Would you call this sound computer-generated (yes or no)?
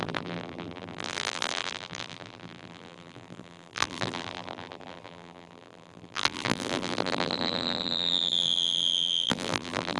yes